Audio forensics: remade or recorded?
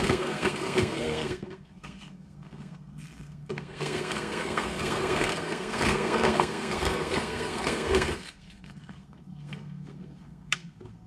remade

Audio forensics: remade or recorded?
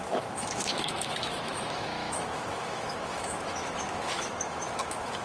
remade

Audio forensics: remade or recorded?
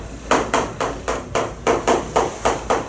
recorded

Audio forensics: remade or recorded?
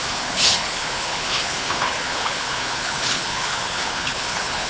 remade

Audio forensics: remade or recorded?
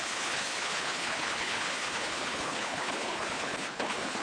remade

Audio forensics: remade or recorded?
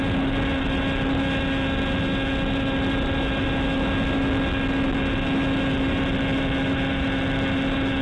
recorded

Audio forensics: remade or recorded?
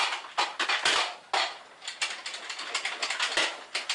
recorded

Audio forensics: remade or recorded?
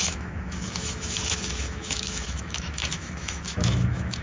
remade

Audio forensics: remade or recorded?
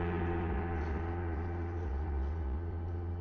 remade